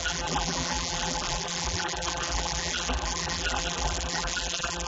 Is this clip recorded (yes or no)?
no